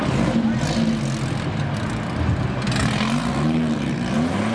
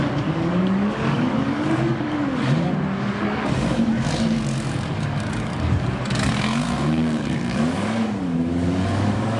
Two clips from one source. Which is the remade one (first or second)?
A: second